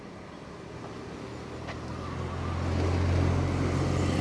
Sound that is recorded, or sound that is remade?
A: recorded